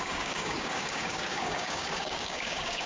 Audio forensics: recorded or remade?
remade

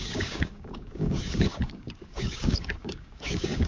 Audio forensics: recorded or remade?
remade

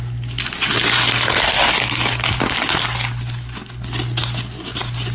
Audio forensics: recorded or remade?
recorded